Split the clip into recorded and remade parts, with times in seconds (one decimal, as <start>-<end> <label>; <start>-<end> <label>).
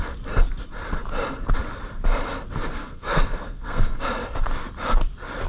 0.0-2.7 recorded; 2.7-4.0 remade; 4.0-5.5 recorded